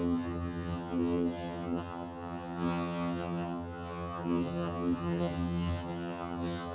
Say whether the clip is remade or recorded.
remade